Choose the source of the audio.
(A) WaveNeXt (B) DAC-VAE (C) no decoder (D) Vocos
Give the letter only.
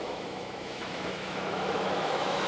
B